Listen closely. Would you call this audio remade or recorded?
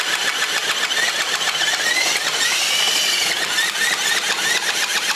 recorded